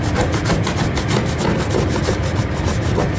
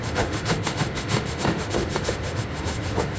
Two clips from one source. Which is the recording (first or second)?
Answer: first